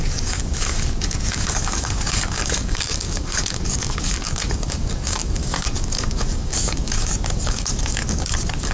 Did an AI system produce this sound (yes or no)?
yes